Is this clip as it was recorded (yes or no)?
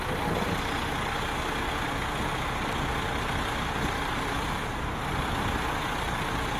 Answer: yes